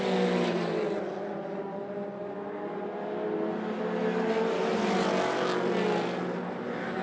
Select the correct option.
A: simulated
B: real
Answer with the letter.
B